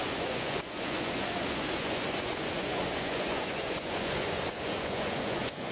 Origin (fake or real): fake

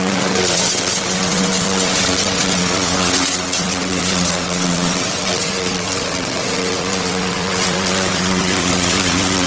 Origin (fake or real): fake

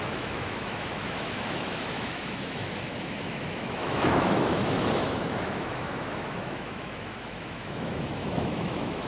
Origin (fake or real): fake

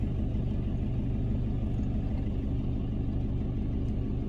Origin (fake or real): real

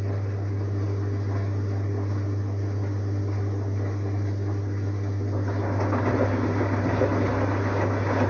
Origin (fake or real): real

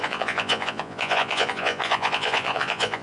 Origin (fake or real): fake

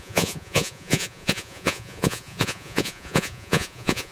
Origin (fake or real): fake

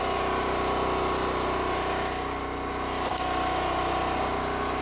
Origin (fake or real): real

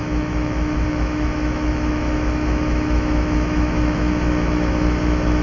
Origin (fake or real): fake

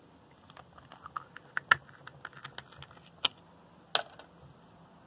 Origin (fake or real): real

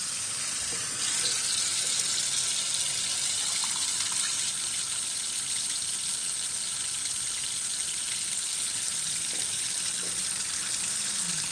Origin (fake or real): real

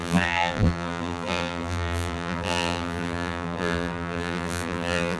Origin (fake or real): fake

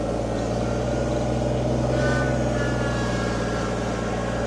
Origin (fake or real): real